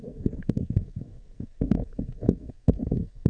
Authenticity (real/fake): fake